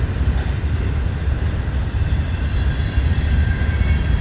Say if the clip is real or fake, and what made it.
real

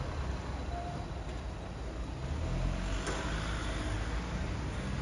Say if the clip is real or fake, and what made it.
real